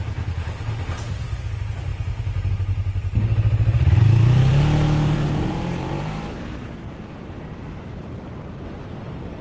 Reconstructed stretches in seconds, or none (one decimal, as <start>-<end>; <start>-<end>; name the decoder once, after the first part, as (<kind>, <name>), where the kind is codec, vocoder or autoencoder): 0.0-1.9 (vocoder, BigVGAN v2); 2.5-4.5; 5.5-9.4